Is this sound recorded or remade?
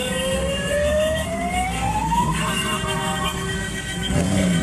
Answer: remade